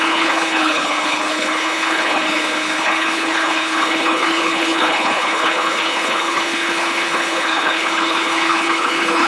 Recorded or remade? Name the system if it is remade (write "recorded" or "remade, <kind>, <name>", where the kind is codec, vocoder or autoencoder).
remade, codec, HILCodec